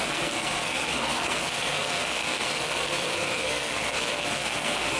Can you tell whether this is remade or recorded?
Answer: remade